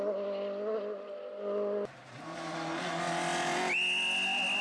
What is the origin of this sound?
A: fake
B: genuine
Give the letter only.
B